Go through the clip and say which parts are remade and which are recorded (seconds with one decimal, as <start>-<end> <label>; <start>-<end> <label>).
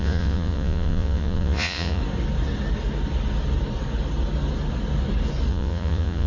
0.0-2.0 remade; 2.0-5.5 recorded; 5.5-6.3 remade